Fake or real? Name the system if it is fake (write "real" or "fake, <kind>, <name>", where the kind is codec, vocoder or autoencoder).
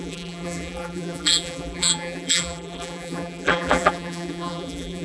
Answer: fake, vocoder, BigVGAN v2